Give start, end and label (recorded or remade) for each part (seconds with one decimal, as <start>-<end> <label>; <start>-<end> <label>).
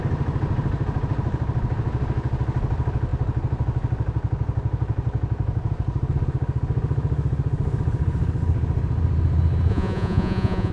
0.0-9.7 recorded; 9.7-10.7 remade